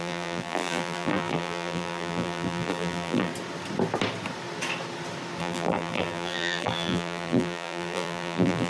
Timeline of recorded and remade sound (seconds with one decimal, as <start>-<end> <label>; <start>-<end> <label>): 0.0-3.3 remade; 3.3-5.4 recorded; 5.4-8.7 remade